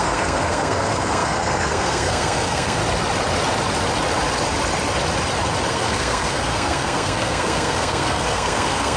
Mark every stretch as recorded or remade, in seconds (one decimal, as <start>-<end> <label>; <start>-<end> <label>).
0.0-2.8 remade; 2.8-5.7 recorded; 5.7-9.0 remade